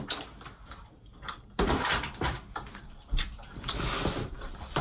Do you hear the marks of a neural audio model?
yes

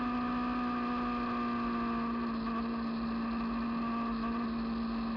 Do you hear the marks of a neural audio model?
no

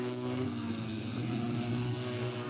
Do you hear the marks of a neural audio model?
yes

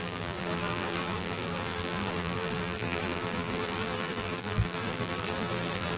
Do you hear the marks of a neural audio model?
yes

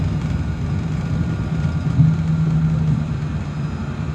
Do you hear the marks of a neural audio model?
no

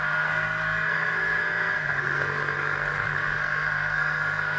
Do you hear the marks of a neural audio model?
yes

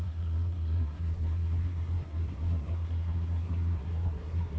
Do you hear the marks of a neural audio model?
yes